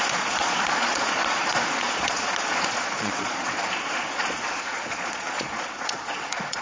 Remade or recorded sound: remade